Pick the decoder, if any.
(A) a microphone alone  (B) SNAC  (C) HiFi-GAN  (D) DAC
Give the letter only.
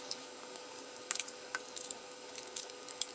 D